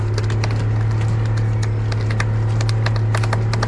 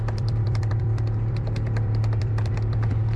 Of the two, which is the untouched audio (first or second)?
first